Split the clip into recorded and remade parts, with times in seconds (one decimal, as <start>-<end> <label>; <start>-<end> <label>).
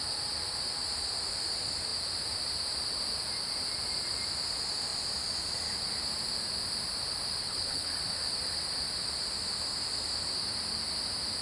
0.0-7.4 recorded; 7.4-7.9 remade; 7.9-11.4 recorded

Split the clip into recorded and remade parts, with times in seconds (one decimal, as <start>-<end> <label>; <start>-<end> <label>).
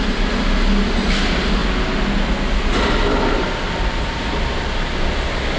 0.0-5.6 recorded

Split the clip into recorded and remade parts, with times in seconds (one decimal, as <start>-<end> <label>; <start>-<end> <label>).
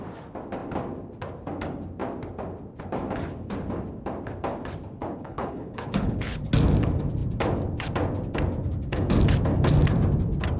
0.0-5.0 recorded; 5.0-6.5 remade; 6.5-10.6 recorded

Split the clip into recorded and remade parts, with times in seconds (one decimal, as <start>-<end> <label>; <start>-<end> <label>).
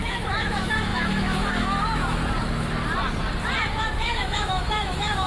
0.0-2.2 remade; 2.2-3.6 recorded; 3.6-5.3 remade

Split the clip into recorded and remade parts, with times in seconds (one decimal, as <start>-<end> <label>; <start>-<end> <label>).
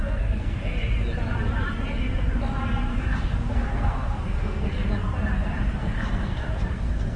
0.0-0.6 remade; 0.6-2.9 recorded; 2.9-4.9 remade; 4.9-5.8 recorded; 5.8-7.2 remade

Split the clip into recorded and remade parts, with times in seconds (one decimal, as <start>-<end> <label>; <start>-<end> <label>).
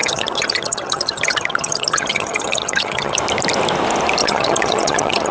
0.0-3.2 remade; 3.2-4.2 recorded; 4.2-5.3 remade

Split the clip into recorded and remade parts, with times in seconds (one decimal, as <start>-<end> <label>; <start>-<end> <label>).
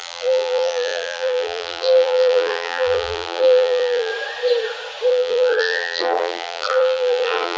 0.0-4.1 remade; 4.1-5.1 recorded; 5.1-7.6 remade